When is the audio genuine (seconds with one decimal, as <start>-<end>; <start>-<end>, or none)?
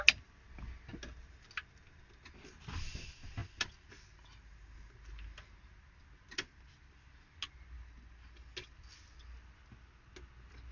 0.0-10.7